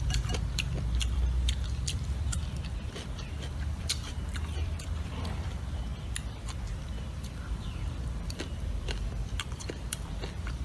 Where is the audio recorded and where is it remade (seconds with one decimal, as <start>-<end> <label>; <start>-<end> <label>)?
0.0-5.9 remade; 5.9-7.2 recorded; 7.2-10.6 remade